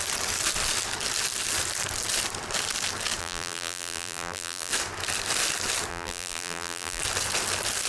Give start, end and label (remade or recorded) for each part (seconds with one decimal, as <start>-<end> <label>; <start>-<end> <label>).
0.0-3.2 recorded; 3.2-4.7 remade; 4.7-5.9 recorded; 5.9-7.0 remade; 7.0-7.9 recorded